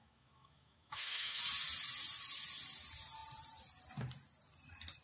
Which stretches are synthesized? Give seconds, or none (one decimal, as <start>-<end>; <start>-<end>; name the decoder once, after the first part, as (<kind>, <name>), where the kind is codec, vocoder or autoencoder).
0.0-1.4 (autoencoder, DAC-VAE)